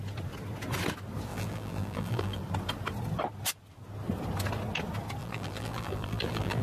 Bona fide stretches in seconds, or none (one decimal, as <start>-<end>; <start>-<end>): 0.0-1.3; 2.4-5.2